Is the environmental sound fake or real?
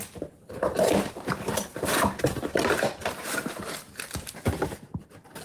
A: fake